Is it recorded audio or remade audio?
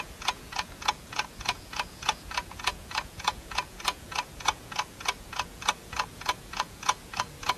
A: remade